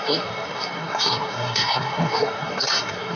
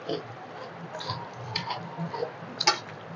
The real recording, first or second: second